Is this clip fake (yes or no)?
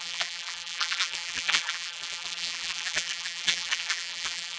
yes